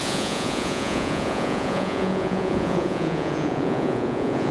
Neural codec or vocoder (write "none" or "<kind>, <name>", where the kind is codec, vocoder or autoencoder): vocoder, Vocos